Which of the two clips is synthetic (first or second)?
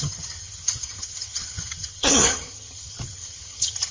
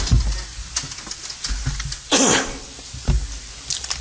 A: first